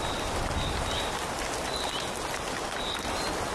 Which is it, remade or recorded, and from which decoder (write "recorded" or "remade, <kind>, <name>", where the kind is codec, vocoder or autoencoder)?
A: recorded